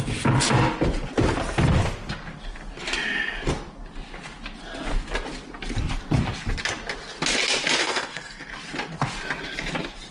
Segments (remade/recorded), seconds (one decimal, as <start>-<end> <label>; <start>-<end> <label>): 0.0-7.8 recorded; 7.8-8.5 remade; 8.5-10.1 recorded